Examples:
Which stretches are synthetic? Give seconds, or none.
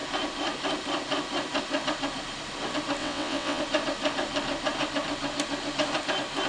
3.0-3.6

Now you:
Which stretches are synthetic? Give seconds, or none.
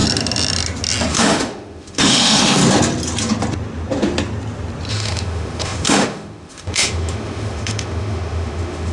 1.1-2.6; 4.9-8.9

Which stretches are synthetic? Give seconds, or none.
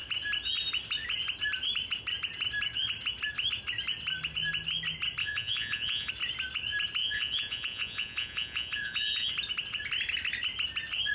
5.2-6.1; 7.0-9.3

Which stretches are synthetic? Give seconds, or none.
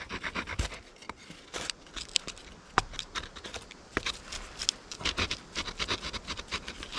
none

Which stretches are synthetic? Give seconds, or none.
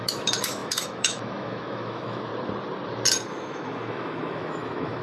0.0-2.3; 3.3-5.0